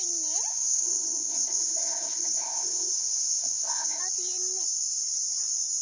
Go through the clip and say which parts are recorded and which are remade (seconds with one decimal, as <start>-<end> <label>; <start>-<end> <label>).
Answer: 0.0-0.5 recorded; 0.5-4.0 remade; 4.0-5.8 recorded